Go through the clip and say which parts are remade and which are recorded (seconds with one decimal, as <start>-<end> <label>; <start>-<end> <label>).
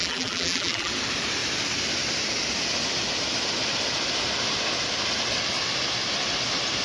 0.0-0.9 remade; 0.9-6.8 recorded